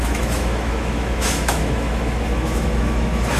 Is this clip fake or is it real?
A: fake